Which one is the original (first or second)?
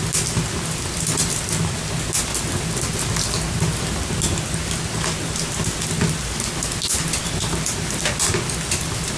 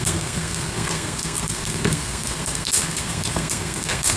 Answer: first